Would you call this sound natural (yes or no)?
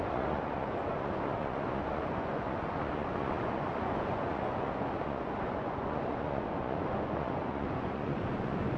no